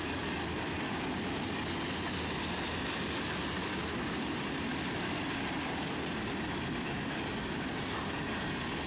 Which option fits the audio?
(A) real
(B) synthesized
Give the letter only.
A